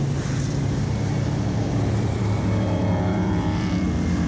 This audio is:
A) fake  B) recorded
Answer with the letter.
A